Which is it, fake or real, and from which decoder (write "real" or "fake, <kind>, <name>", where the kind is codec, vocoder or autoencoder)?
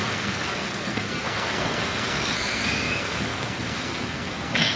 fake, codec, SNAC